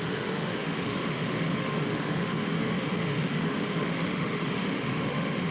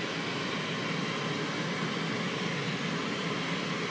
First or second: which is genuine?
second